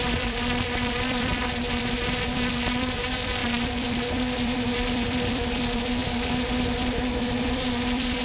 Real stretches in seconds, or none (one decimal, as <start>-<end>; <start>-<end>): none